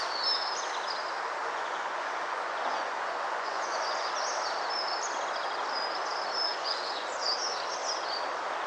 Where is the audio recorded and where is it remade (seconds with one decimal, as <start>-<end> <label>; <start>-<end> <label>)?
0.0-1.4 recorded; 1.4-4.1 remade; 4.1-6.5 recorded; 6.5-7.1 remade; 7.1-8.7 recorded